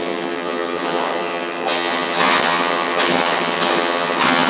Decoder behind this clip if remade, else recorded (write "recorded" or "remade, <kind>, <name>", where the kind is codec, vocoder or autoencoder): remade, vocoder, HiFi-GAN